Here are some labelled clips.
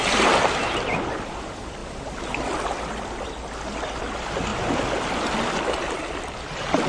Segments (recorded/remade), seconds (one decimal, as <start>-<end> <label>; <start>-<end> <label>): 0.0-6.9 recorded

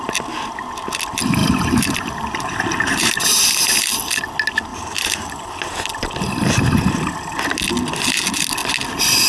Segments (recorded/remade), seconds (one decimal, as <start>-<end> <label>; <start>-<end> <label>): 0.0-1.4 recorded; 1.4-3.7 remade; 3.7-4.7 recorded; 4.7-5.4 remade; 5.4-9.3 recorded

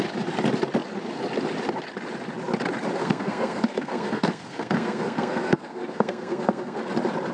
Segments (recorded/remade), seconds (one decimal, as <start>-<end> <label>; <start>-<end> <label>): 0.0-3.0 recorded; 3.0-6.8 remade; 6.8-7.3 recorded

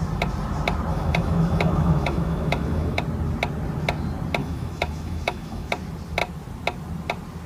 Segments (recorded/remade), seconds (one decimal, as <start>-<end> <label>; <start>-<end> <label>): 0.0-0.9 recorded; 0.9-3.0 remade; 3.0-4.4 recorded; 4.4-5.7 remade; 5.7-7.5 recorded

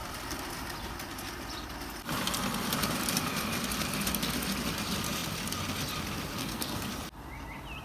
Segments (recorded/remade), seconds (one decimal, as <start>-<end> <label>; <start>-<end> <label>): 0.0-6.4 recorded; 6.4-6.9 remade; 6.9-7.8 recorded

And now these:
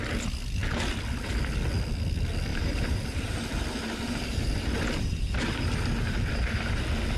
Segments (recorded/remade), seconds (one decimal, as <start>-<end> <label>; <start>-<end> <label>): 0.0-2.5 recorded; 2.5-6.8 remade; 6.8-7.2 recorded

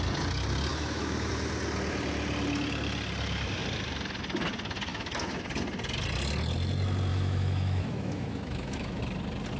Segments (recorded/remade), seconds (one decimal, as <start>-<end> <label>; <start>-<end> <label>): 0.0-0.7 recorded; 0.7-1.3 remade; 1.3-4.9 recorded; 4.9-5.4 remade; 5.4-7.1 recorded; 7.1-9.0 remade; 9.0-9.6 recorded